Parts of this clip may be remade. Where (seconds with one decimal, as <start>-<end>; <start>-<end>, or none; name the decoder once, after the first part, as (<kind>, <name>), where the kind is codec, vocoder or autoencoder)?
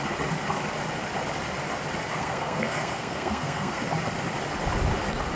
2.1-3.8 (codec, SNAC)